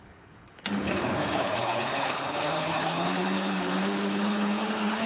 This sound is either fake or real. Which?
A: fake